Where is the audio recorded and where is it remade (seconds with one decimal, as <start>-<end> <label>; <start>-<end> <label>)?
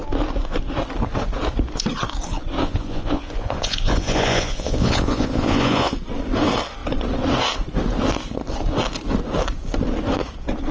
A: 0.0-2.6 recorded; 2.6-5.9 remade; 5.9-10.7 recorded